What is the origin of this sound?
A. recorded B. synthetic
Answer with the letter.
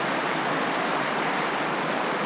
A